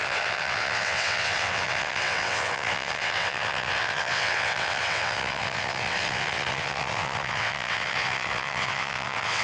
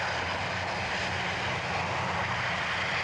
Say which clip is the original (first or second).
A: second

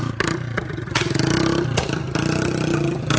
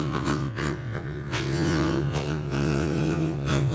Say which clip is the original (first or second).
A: first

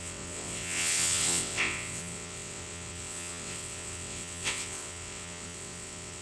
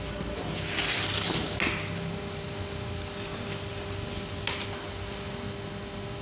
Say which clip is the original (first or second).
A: second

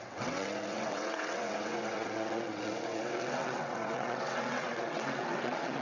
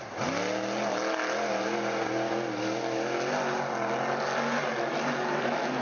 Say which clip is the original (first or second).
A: second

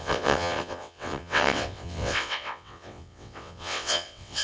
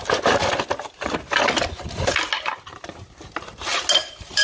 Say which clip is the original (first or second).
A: second